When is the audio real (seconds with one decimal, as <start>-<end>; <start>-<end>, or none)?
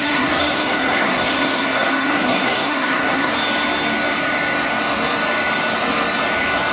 3.3-6.7